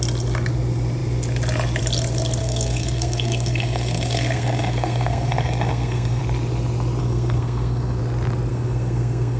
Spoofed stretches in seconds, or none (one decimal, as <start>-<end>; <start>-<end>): 2.4-6.2; 7.0-8.0; 8.5-9.4